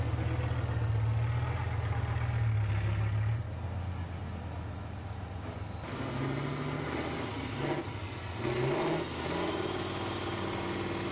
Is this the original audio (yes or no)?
yes